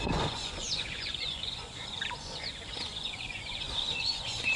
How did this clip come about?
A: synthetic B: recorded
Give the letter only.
A